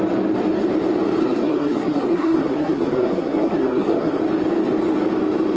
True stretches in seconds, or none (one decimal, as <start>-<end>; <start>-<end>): 0.0-1.2; 4.2-5.6